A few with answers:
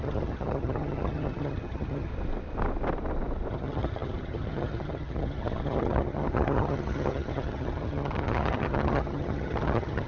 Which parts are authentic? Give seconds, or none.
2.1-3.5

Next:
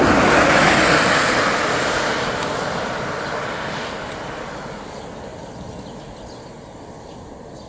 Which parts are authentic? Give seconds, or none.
0.0-7.7